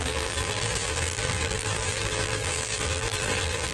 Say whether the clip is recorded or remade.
remade